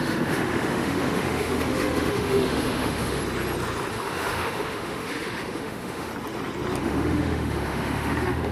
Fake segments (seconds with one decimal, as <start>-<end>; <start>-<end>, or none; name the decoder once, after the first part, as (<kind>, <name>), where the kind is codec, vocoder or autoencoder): 0.0-3.2 (autoencoder, DAC-VAE); 3.9-6.1; 6.8-8.5